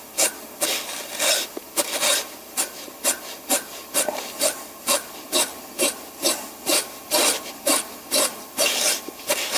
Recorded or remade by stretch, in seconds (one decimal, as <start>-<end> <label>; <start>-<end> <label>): 0.0-9.6 recorded